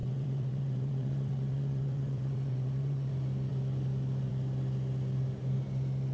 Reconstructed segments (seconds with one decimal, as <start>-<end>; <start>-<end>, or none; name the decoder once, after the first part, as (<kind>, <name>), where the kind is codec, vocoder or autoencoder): 0.0-3.1 (vocoder, WaveNeXt)

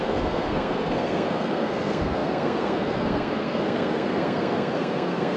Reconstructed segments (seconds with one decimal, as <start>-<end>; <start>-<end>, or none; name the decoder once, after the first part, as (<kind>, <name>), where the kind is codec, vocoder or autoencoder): 0.0-5.4 (codec, SNAC)

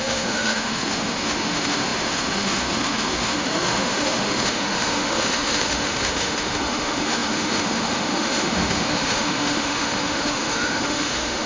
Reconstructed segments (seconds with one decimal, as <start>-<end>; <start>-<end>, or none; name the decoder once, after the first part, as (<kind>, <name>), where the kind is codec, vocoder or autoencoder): 0.0-11.5 (autoencoder, DAC-VAE)

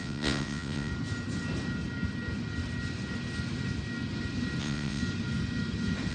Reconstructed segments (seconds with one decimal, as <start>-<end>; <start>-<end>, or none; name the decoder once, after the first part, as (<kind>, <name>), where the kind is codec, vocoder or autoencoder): 0.0-0.9 (vocoder, WaveNeXt); 4.6-5.0

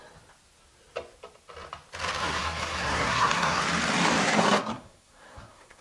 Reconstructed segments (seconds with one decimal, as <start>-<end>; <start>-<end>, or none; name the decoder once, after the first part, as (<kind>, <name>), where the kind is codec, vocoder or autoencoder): 2.2-3.6 (codec, SNAC); 4.2-5.8

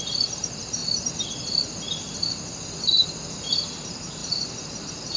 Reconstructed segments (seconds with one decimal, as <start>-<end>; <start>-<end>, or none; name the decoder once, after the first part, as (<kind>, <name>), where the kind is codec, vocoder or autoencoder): 0.0-0.8 (vocoder, BigVGAN v2); 3.4-5.2